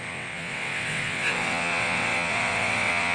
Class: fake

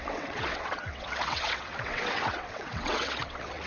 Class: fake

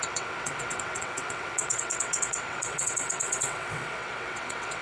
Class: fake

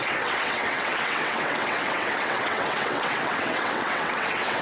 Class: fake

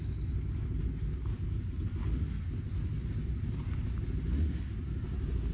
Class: real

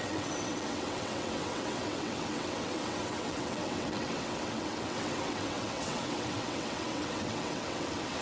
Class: fake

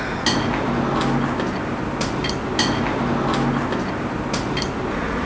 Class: real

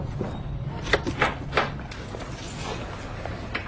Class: real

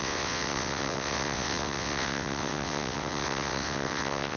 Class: fake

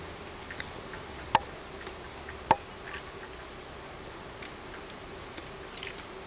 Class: real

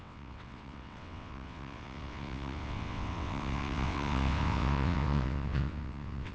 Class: fake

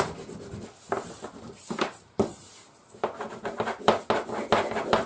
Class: real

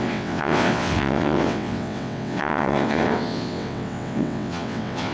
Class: fake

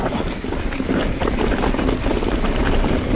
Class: real